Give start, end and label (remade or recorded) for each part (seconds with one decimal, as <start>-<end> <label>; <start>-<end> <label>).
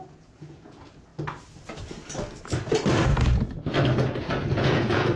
0.0-1.1 remade; 1.1-4.2 recorded; 4.2-5.2 remade